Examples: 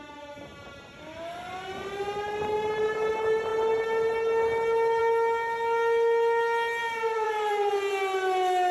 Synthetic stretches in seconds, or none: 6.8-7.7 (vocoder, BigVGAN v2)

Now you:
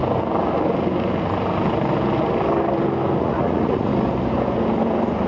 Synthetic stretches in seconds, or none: 3.2-3.9 (vocoder, Vocos)

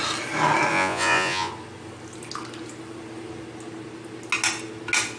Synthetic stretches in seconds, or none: 0.7-1.5 (vocoder, Vocos)

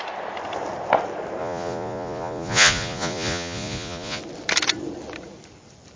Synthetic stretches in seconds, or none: 1.4-4.2 (vocoder, Vocos)

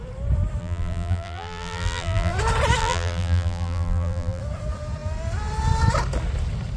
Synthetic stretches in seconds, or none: 0.6-2.3 (vocoder, BigVGAN v2); 2.8-4.4

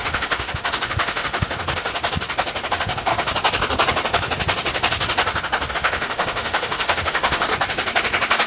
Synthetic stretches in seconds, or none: 0.0-1.9 (autoencoder, DAC-VAE); 2.7-3.1; 5.7-7.5

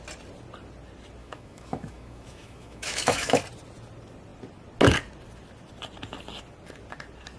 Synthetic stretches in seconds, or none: 1.2-3.4 (autoencoder, DAC-VAE)

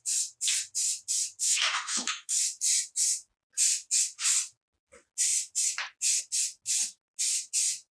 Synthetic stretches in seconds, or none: 1.4-2.3 (autoencoder, DAC-VAE)